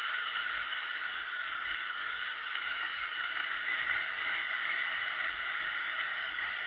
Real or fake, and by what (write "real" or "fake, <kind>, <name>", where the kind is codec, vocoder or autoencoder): fake, codec, DAC